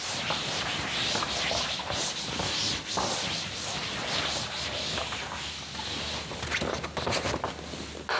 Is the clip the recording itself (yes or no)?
yes